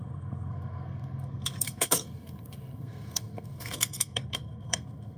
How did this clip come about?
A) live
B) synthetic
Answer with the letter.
B